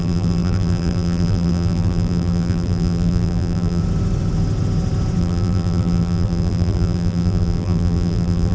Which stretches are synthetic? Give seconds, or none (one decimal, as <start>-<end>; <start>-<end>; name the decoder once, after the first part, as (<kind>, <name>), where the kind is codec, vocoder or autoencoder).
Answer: 0.0-3.8 (vocoder, BigVGAN v2); 5.2-8.5